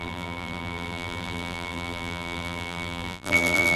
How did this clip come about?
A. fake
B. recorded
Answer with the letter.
A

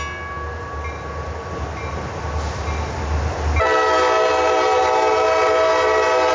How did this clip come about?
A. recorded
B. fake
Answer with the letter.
A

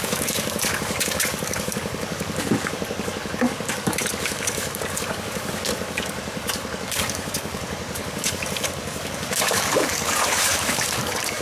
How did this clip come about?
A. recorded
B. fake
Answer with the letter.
B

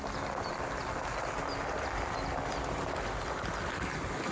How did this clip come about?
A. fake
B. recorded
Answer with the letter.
B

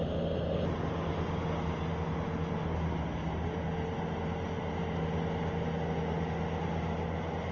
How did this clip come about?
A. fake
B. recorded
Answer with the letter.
B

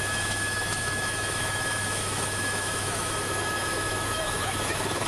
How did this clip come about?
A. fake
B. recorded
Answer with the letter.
A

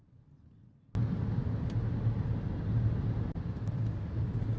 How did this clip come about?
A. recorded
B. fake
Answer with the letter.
A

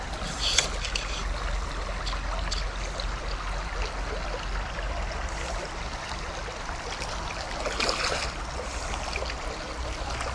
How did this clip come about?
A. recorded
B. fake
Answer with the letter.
A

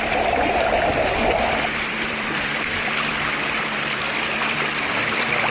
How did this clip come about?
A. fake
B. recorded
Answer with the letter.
A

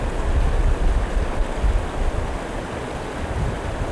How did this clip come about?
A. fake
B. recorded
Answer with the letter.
B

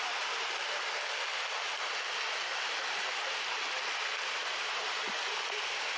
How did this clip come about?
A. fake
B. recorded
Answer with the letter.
B